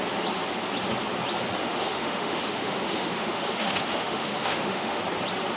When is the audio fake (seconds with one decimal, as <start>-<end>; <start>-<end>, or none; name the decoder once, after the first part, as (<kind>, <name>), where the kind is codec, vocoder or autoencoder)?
1.6-5.0 (autoencoder, DAC-VAE)